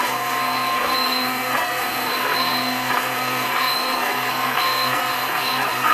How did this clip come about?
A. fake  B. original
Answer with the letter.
A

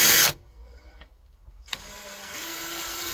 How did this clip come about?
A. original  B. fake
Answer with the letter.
B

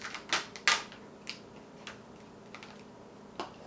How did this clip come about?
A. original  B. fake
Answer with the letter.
A